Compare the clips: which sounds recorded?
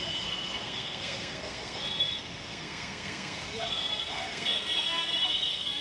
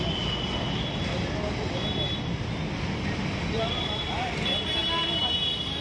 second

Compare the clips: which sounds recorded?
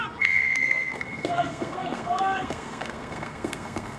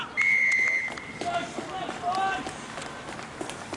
second